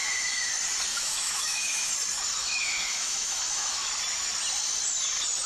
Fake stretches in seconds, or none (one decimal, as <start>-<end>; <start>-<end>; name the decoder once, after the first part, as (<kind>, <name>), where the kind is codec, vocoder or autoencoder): 0.0-0.5 (autoencoder, DAC-VAE); 0.9-1.9; 2.4-3.9